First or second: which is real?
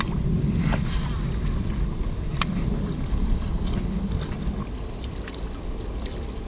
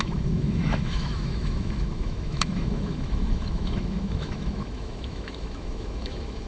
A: first